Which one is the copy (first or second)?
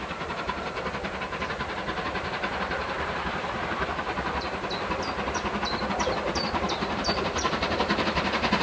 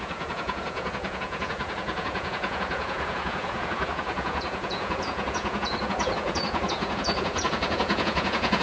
second